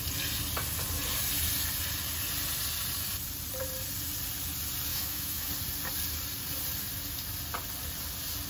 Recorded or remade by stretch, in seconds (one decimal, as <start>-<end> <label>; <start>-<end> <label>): 0.0-4.9 recorded; 4.9-5.5 remade; 5.5-8.5 recorded